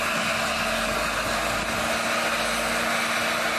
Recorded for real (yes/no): yes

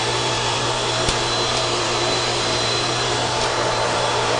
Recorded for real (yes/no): no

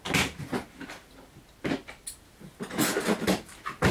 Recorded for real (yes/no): yes